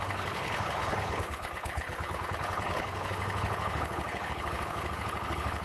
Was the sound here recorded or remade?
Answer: remade